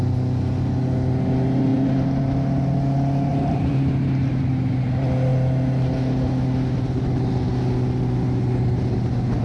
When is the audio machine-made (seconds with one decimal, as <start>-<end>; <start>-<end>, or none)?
1.7-2.2; 3.3-4.4